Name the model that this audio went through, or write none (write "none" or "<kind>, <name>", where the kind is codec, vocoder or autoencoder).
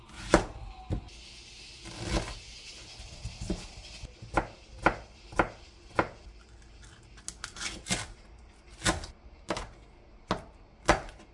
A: none